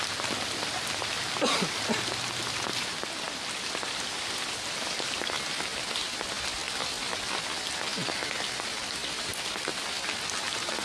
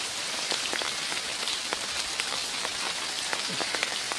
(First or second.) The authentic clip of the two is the first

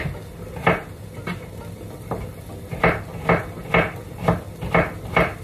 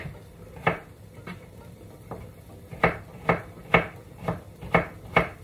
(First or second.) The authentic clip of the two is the first